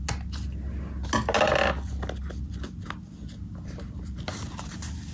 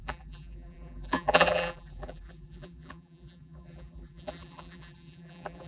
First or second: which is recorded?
first